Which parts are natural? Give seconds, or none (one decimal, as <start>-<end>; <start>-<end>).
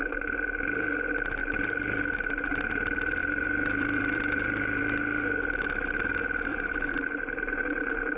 0.0-3.2; 4.8-6.5; 7.6-8.2